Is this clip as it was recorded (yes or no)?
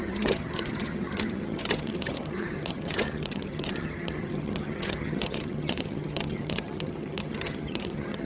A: no